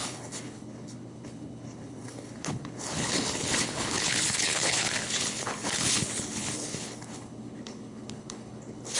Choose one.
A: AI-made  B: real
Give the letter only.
A